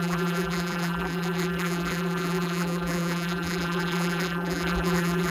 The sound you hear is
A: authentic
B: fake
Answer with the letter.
B